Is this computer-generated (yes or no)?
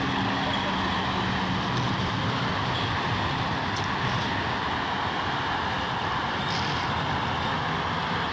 no